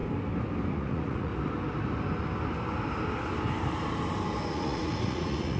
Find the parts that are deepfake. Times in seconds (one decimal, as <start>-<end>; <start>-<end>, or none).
0.7-1.3; 4.5-5.6